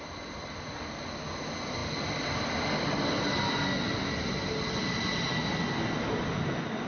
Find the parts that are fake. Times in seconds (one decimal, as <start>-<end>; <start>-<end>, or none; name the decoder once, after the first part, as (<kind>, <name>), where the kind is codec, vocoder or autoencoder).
none